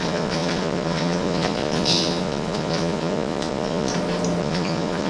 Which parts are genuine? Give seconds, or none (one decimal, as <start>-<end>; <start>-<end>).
3.9-4.4